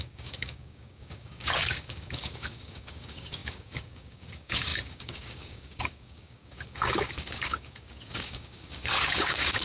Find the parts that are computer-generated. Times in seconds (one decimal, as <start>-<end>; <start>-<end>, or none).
0.0-9.6